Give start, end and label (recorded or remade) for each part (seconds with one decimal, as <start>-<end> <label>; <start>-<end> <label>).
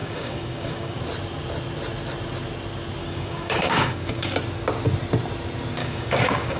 0.0-1.0 remade; 1.0-3.0 recorded; 3.0-4.3 remade; 4.3-5.8 recorded; 5.8-6.6 remade